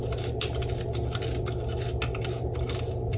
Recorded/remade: recorded